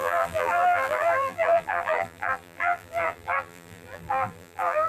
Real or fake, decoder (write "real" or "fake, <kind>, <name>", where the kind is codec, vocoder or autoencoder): fake, vocoder, BigVGAN v2